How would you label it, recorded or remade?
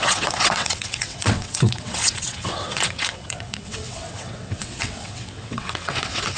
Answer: remade